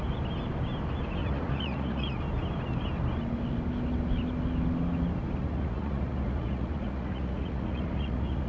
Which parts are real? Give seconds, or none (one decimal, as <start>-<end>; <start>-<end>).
0.0-1.2; 2.2-5.4